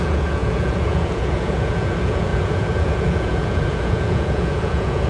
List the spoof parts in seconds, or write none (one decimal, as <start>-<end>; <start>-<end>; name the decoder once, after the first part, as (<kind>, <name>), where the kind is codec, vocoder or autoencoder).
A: 0.0-5.1 (vocoder, Vocos)